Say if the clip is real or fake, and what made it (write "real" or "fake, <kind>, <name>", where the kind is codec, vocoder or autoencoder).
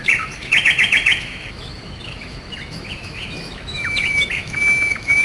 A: fake, autoencoder, DAC-VAE